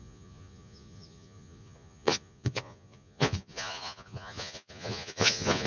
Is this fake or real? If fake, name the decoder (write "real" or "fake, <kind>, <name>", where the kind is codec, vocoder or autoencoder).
fake, vocoder, Vocos